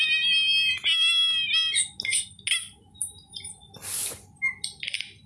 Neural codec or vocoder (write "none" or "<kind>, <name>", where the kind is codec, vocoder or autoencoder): none